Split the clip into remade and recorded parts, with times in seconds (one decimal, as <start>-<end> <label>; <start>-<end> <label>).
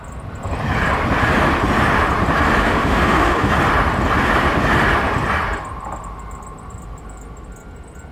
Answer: 0.0-2.6 recorded; 2.6-3.5 remade; 3.5-8.1 recorded